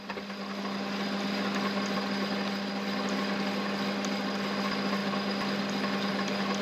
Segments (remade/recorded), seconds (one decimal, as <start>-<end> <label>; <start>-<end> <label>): 0.0-6.1 recorded; 6.1-6.6 remade